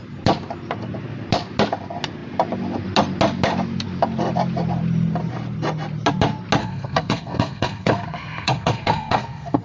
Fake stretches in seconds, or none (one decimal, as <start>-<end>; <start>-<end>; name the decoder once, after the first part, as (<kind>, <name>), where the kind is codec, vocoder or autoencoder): 6.6-9.6 (codec, SNAC)